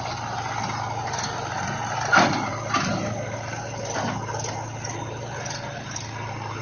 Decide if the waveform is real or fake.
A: real